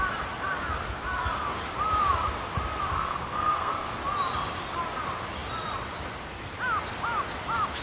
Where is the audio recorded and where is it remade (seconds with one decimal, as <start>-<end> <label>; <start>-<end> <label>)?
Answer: 0.0-2.9 recorded; 2.9-3.9 remade; 3.9-7.8 recorded